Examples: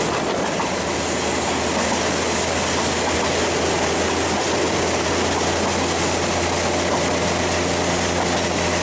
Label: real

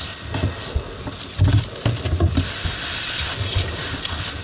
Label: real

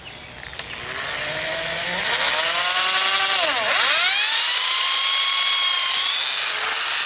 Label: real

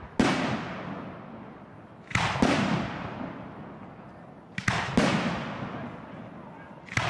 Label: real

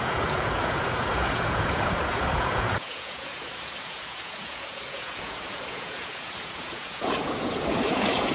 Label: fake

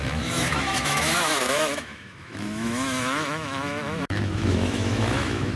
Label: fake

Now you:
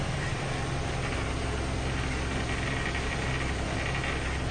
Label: real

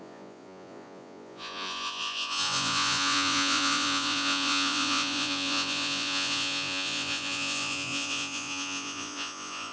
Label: fake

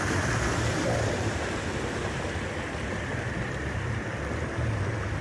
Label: real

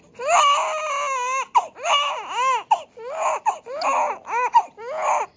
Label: real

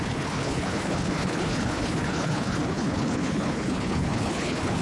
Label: fake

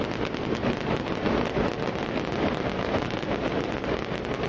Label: real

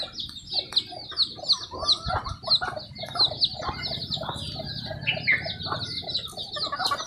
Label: real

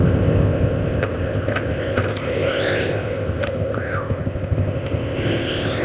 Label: fake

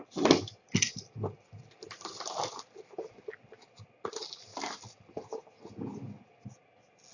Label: real